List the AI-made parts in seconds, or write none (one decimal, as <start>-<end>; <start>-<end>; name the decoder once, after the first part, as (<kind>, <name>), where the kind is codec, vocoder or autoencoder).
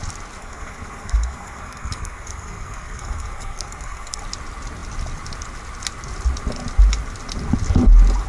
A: 0.4-4.2 (codec, SNAC)